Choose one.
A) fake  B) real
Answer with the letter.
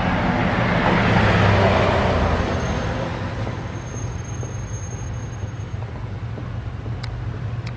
B